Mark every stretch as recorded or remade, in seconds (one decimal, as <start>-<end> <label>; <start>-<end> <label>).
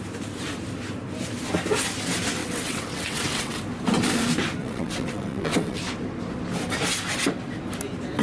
0.0-2.4 recorded; 2.4-3.6 remade; 3.6-4.6 recorded; 4.6-5.8 remade; 5.8-8.2 recorded